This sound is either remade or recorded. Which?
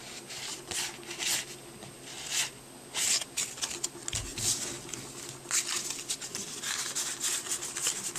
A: recorded